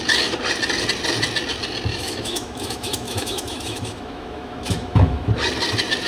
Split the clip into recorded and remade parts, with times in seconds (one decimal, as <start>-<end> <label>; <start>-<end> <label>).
0.0-1.9 recorded; 1.9-5.3 remade; 5.3-6.1 recorded